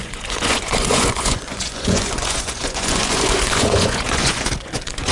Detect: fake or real fake